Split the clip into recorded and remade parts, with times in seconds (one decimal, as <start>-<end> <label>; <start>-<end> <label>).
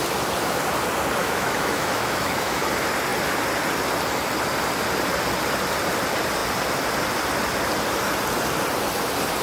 0.0-1.2 recorded; 1.2-2.6 remade; 2.6-9.4 recorded